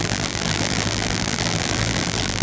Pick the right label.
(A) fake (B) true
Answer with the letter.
A